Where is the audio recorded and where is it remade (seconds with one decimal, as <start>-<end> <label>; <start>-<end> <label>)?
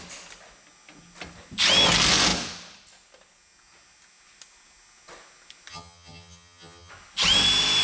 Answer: 0.0-5.7 recorded; 5.7-6.9 remade; 6.9-7.8 recorded